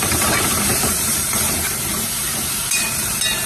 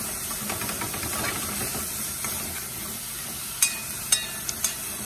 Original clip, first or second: second